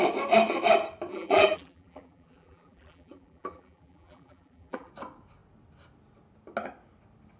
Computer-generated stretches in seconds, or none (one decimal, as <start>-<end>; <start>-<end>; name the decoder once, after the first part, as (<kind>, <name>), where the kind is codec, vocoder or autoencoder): 1.1-4.9 (vocoder, BigVGAN v2)